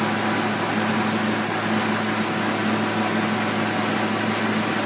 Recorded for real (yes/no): yes